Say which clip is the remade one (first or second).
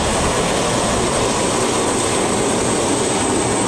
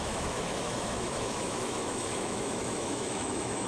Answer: second